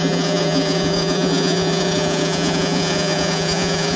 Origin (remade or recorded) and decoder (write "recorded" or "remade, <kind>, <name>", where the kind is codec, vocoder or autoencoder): remade, vocoder, Vocos